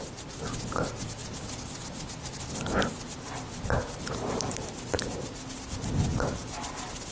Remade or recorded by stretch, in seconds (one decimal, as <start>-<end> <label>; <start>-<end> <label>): 0.0-7.1 recorded